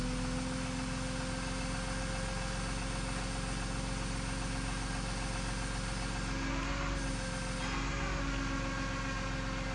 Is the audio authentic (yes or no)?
yes